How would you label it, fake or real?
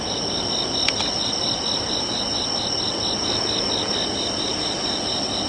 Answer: real